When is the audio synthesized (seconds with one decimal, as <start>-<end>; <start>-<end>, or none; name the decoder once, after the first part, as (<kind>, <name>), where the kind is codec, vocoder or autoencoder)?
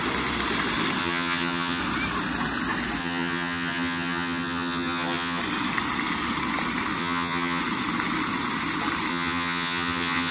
1.0-1.8 (vocoder, HiFi-GAN); 3.0-5.4; 7.0-7.6; 9.1-10.3